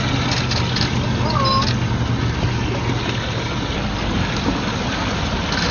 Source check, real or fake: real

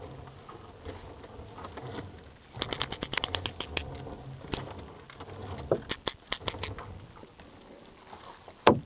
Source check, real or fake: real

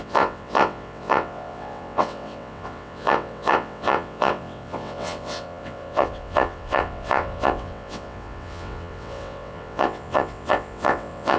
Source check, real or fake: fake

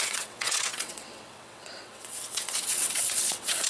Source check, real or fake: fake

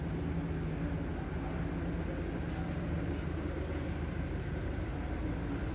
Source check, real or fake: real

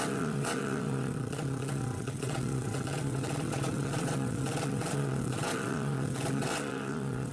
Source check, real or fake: fake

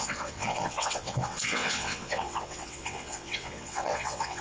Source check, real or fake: fake